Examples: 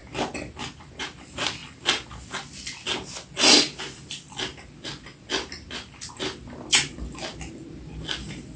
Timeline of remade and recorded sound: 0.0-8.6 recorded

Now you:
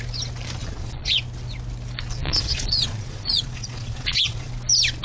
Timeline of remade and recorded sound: 0.0-0.6 recorded; 0.6-1.2 remade; 1.2-2.2 recorded; 2.2-4.5 remade; 4.5-5.0 recorded

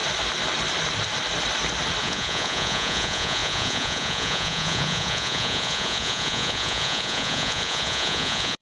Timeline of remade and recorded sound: 0.0-2.0 recorded; 2.0-8.6 remade